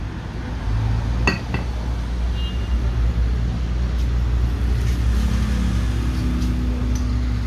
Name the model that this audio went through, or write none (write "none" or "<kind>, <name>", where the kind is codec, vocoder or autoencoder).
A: none